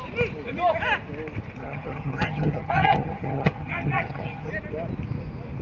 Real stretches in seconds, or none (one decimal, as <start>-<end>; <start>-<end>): 0.0-1.6; 4.5-5.6

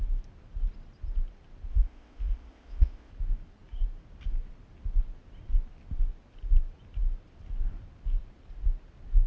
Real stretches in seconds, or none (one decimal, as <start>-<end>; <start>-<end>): 0.0-1.7; 3.1-9.3

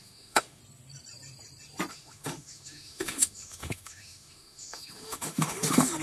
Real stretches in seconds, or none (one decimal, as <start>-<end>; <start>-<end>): 0.6-1.9

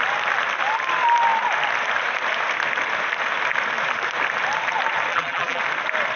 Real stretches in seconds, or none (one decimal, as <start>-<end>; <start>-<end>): 0.0-5.1; 5.6-6.2

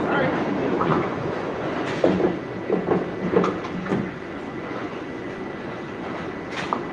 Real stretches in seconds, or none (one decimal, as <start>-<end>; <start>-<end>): 0.0-0.6; 2.2-3.8; 6.1-6.9

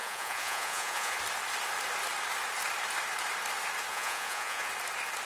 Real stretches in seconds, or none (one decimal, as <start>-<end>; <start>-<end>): 1.2-3.9; 4.7-5.2